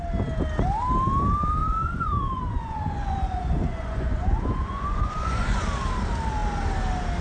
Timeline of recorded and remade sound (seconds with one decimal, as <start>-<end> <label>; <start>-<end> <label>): 0.0-1.6 recorded; 1.6-5.6 remade; 5.6-7.2 recorded